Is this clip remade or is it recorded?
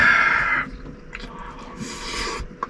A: recorded